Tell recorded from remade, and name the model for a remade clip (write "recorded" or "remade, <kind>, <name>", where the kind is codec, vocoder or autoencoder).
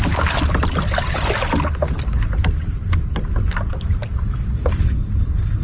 recorded